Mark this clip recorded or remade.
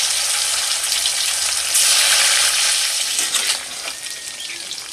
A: recorded